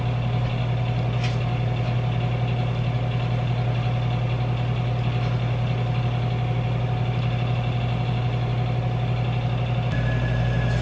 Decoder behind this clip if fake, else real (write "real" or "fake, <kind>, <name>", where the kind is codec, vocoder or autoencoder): real